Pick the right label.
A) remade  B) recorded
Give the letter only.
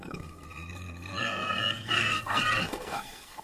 A